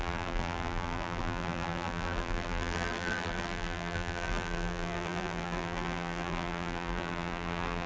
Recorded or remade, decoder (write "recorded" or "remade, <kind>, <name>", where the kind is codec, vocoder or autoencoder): remade, vocoder, BigVGAN v2